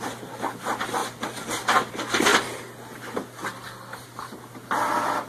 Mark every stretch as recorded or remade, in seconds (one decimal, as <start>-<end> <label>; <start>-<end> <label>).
0.0-1.0 recorded; 1.0-1.9 remade; 1.9-5.3 recorded